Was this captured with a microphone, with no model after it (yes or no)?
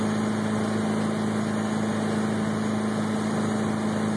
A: yes